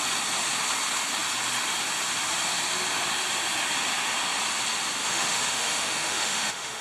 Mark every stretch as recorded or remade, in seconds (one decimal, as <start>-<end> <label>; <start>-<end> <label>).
0.0-5.0 recorded; 5.0-6.8 remade